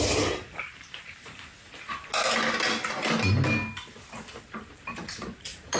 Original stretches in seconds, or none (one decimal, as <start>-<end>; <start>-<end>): 1.5-4.4